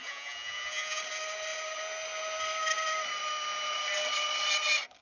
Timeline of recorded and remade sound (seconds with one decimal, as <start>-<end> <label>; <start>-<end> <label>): 0.0-1.0 remade; 1.0-5.0 recorded